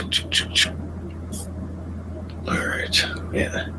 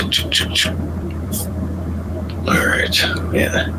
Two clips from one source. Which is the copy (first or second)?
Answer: second